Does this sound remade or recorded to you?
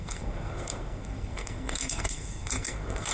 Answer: remade